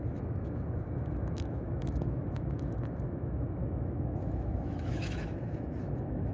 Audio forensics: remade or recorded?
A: remade